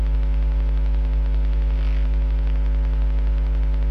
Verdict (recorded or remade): recorded